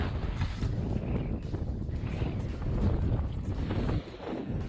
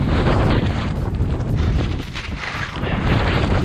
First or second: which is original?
first